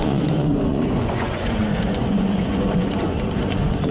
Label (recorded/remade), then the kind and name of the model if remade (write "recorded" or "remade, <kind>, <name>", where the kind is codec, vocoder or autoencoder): remade, vocoder, Vocos